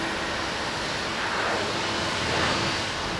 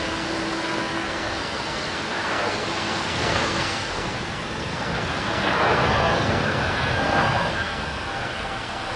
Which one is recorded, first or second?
first